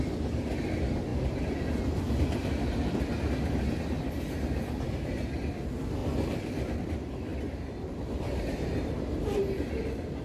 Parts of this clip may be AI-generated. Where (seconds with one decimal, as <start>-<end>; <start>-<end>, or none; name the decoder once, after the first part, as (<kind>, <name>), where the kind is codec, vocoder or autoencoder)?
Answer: 1.1-2.7 (vocoder, BigVGAN v2); 6.0-6.8

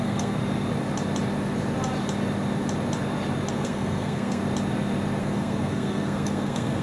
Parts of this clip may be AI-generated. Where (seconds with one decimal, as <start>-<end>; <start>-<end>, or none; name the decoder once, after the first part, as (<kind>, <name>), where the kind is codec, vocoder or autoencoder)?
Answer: 0.0-0.4 (codec, SNAC); 3.5-4.4; 5.2-6.8

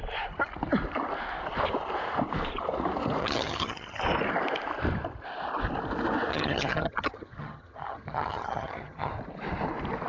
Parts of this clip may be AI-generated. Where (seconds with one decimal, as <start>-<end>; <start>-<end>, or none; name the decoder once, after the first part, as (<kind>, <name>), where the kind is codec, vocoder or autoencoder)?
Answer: 3.2-4.0 (vocoder, HiFi-GAN); 6.3-9.1